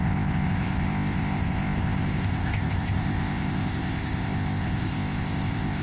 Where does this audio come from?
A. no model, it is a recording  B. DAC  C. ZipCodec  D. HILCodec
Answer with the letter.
C